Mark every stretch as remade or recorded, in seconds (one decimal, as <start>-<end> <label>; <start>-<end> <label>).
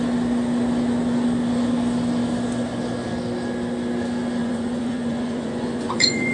0.0-4.4 recorded; 4.4-6.3 remade